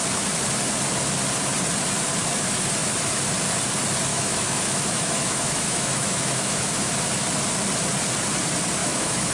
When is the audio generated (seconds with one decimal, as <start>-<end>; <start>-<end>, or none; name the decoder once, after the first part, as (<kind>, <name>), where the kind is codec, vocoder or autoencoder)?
4.1-6.9 (autoencoder, DAC-VAE); 8.8-9.3